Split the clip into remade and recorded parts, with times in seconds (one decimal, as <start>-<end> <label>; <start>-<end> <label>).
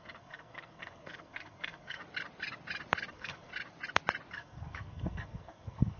0.0-2.0 remade; 2.0-3.1 recorded; 3.1-3.5 remade; 3.5-4.3 recorded; 4.3-6.0 remade